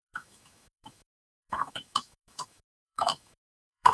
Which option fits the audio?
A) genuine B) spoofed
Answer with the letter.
B